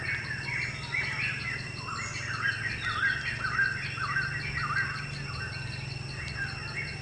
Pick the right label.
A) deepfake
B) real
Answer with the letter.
B